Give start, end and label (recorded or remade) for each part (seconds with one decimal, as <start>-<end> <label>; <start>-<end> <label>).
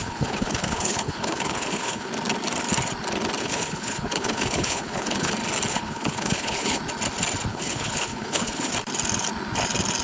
0.0-2.1 remade; 2.1-3.4 recorded; 3.4-5.3 remade; 5.3-5.7 recorded; 5.7-6.8 remade; 6.8-7.5 recorded; 7.5-8.7 remade; 8.7-10.0 recorded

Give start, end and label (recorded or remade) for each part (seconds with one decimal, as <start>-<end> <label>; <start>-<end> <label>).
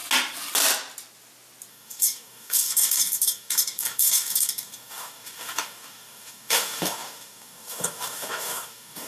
0.0-1.7 recorded; 1.7-9.1 remade